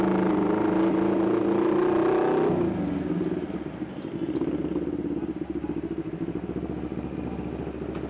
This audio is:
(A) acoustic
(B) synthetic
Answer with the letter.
A